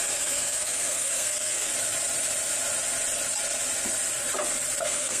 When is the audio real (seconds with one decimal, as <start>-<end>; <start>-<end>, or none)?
1.7-4.8